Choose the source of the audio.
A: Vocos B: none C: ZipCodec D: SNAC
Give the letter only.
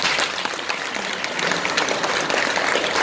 B